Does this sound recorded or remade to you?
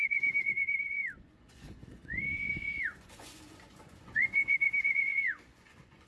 remade